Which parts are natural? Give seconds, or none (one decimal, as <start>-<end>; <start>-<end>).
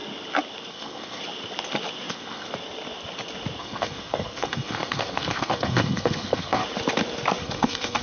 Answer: 0.0-0.7; 1.2-2.1; 2.5-3.6; 6.6-7.4